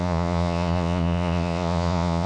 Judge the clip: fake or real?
fake